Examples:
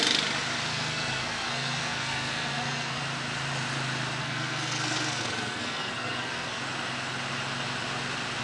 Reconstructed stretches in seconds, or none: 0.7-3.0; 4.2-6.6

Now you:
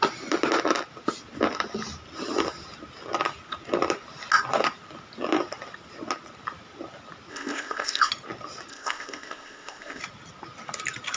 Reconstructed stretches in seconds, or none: 7.3-8.1; 8.7-10.0